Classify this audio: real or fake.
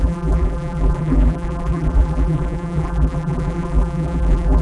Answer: fake